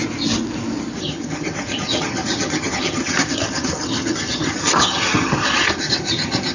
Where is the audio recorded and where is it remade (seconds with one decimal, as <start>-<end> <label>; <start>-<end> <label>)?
0.0-1.0 recorded; 1.0-6.5 remade